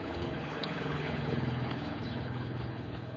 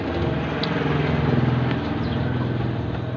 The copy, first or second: first